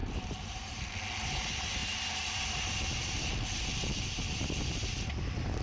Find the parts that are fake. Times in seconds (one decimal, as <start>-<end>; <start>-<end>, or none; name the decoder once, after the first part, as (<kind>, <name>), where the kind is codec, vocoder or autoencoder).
0.0-0.9 (vocoder, BigVGAN v2)